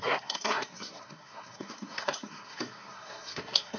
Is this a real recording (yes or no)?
no